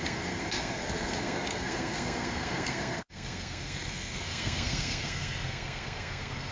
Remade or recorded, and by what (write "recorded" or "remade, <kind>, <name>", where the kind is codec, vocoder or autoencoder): remade, codec, SNAC